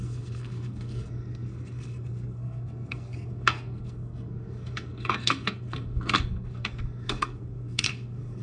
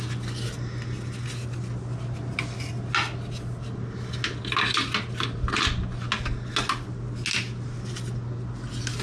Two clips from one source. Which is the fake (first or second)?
first